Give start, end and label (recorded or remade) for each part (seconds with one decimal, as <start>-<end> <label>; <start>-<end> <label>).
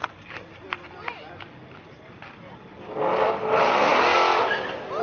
0.0-5.0 recorded